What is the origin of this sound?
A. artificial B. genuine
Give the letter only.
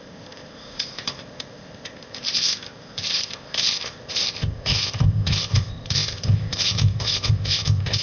A